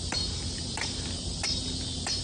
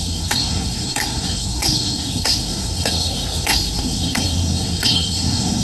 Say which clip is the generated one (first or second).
second